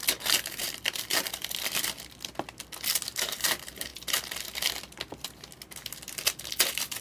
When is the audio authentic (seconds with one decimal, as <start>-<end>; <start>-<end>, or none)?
0.0-0.6; 2.1-7.0